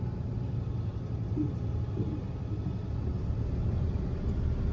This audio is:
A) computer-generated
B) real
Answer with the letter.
B